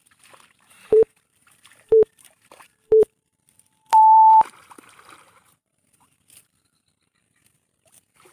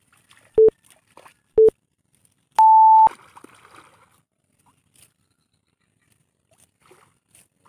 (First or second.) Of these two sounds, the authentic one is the second